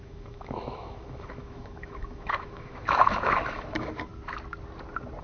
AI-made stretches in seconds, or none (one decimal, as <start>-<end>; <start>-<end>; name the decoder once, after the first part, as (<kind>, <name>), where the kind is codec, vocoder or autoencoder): 0.0-4.1 (autoencoder, DAC-VAE)